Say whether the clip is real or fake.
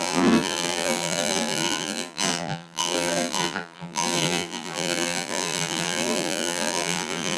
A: fake